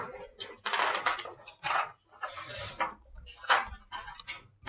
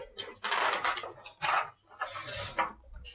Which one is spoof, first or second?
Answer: first